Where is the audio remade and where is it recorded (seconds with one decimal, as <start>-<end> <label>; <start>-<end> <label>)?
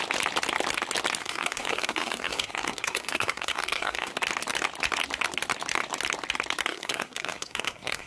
0.0-1.2 recorded; 1.2-4.1 remade; 4.1-6.7 recorded; 6.7-8.1 remade